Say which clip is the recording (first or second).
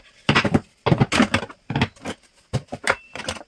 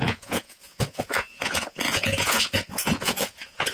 first